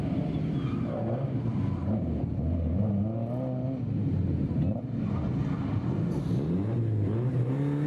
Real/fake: real